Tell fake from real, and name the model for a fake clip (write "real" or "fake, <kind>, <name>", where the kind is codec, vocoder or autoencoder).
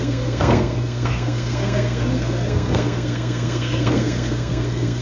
fake, codec, SNAC